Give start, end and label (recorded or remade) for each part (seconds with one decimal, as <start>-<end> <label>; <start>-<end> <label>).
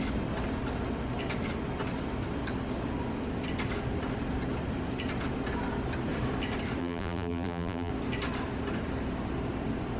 0.0-6.8 recorded; 6.8-7.9 remade; 7.9-10.0 recorded